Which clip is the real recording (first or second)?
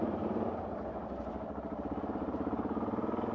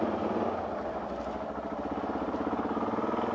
second